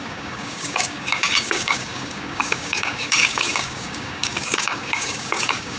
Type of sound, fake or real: fake